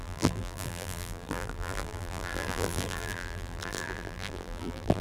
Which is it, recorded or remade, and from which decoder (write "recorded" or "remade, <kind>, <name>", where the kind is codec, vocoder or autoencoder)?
remade, vocoder, BigVGAN v2